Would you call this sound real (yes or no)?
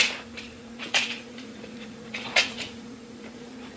no